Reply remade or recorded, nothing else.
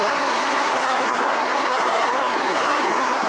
remade